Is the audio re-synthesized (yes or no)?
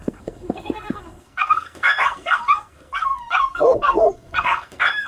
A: yes